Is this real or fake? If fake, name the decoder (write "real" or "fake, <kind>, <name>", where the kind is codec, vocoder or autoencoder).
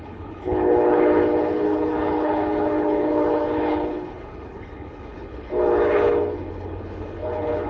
fake, codec, HILCodec